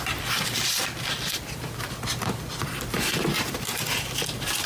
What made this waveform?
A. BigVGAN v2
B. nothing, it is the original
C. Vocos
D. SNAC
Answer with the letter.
A